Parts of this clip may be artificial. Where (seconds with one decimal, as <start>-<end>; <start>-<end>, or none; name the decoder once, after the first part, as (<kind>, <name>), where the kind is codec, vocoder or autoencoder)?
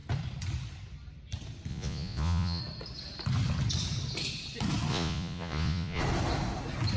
1.7-2.6 (vocoder, Vocos); 4.9-6.0